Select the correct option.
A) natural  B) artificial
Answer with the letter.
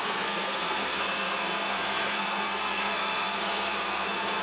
B